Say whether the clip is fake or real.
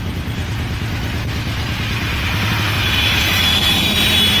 real